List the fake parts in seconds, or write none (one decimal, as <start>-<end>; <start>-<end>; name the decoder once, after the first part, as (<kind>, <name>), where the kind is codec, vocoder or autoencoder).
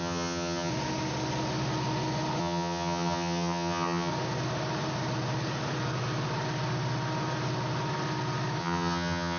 0.0-0.7 (vocoder, HiFi-GAN); 2.4-4.1; 8.6-9.4